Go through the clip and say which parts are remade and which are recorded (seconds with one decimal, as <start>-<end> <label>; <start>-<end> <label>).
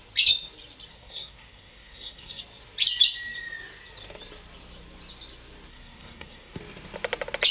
0.0-0.9 recorded; 0.9-2.4 remade; 2.4-5.7 recorded; 5.7-6.6 remade; 6.6-7.5 recorded